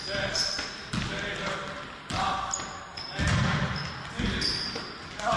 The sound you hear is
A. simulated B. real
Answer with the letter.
B